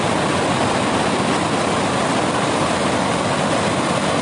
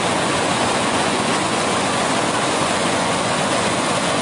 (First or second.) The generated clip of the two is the second